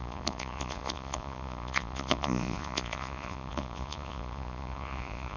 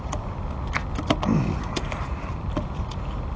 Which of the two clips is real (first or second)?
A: second